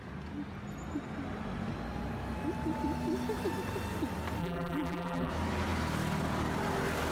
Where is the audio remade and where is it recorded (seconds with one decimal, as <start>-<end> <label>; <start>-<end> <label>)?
0.0-4.4 recorded; 4.4-5.3 remade; 5.3-7.1 recorded